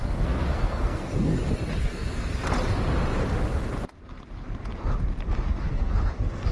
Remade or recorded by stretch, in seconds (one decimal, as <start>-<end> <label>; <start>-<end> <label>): 0.0-1.3 remade; 1.3-1.8 recorded; 1.8-2.3 remade; 2.3-5.6 recorded; 5.6-6.5 remade